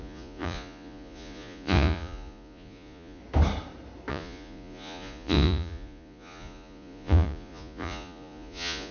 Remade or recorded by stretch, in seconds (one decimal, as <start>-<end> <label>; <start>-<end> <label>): 0.0-3.2 remade; 3.2-4.1 recorded; 4.1-8.9 remade

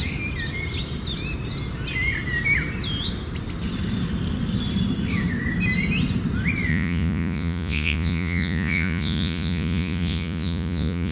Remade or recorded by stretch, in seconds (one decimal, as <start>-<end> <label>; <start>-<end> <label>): 0.0-6.7 recorded; 6.7-11.1 remade

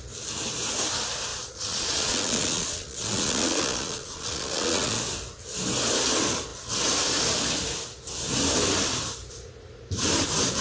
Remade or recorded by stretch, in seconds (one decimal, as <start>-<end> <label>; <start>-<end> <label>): 0.0-1.3 recorded; 1.3-5.0 remade; 5.0-10.6 recorded

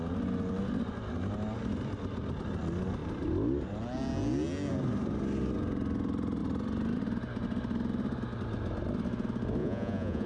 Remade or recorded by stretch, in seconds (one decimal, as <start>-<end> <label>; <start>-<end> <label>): 0.0-9.6 recorded; 9.6-10.3 remade

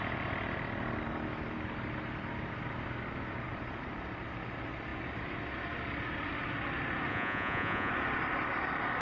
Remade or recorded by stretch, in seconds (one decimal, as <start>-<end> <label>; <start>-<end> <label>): 0.0-7.1 recorded; 7.1-7.9 remade; 7.9-9.0 recorded